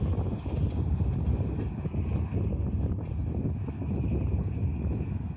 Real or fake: real